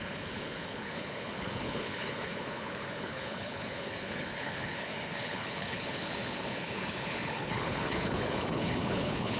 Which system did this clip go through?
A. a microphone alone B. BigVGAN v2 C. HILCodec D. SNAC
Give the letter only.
C